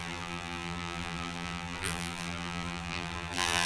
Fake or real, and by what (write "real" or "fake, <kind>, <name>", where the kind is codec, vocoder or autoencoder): fake, vocoder, BigVGAN v2